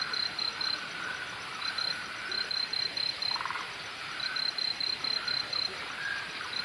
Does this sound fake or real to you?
real